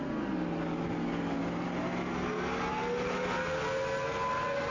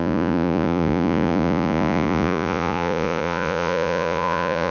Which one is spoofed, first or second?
second